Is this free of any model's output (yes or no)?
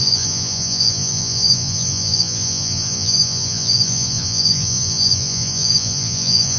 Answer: no